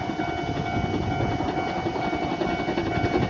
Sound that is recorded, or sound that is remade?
recorded